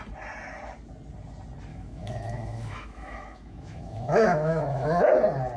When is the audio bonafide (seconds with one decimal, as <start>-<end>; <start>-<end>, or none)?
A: 0.0-1.7; 5.1-5.6